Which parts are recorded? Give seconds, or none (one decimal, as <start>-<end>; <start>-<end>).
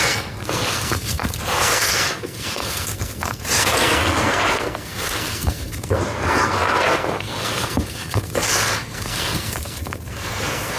none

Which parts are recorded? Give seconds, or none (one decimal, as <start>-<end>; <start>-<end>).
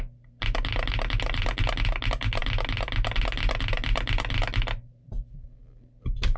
0.0-6.4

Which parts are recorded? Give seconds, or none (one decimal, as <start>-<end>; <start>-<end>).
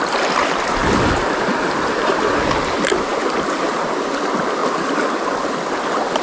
0.0-0.8; 2.2-3.1; 4.1-4.6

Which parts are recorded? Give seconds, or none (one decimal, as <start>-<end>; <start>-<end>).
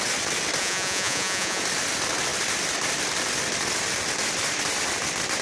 0.0-0.6; 1.6-5.4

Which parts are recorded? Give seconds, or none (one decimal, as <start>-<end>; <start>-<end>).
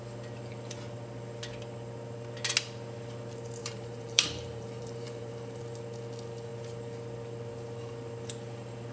0.0-3.6; 5.6-8.9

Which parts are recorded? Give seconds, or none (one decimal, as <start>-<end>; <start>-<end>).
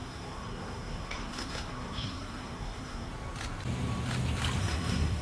3.1-4.6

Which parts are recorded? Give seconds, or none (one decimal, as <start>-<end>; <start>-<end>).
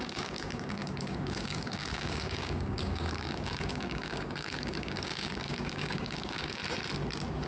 6.6-7.5